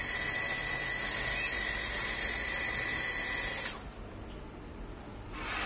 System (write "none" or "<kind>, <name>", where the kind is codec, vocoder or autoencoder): none